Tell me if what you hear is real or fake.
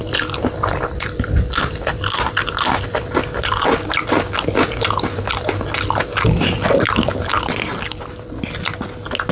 real